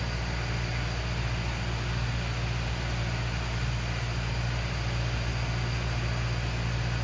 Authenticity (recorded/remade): recorded